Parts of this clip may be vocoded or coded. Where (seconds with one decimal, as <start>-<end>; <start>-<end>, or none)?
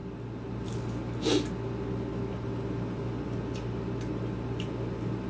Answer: none